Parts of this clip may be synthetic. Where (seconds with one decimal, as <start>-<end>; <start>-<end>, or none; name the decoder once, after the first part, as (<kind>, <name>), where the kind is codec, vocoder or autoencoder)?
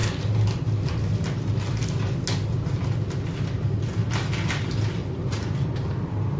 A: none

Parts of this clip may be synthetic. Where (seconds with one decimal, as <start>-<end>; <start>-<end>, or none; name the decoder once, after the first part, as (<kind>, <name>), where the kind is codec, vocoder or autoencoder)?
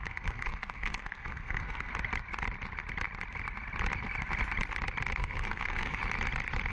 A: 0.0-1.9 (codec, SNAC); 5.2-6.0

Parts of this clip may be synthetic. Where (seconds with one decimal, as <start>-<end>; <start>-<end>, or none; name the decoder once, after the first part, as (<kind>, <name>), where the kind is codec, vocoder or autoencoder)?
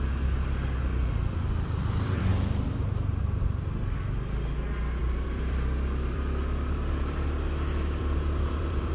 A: 0.9-1.9 (vocoder, BigVGAN v2); 2.3-3.2; 5.0-8.9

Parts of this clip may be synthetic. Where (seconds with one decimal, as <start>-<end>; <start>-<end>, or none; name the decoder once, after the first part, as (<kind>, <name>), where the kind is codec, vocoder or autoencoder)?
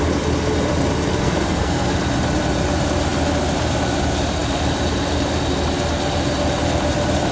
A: 1.1-1.9 (codec, SNAC)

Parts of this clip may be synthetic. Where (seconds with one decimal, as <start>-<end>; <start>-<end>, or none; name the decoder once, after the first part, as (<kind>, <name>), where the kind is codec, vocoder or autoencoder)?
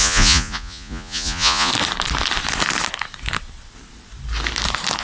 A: 0.0-1.7 (vocoder, Vocos)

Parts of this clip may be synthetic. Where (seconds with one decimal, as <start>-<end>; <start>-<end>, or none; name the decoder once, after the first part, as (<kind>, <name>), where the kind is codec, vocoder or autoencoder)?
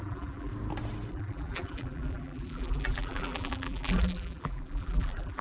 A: 0.0-0.5 (vocoder, BigVGAN v2); 1.1-5.4